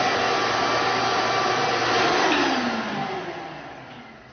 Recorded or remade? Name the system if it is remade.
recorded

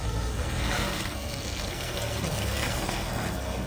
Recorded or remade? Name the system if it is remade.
remade, codec, SNAC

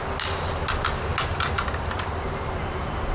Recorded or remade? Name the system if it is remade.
recorded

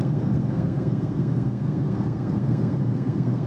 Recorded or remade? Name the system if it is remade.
remade, codec, SNAC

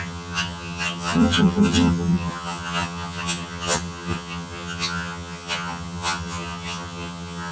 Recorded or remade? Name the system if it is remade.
remade, vocoder, HiFi-GAN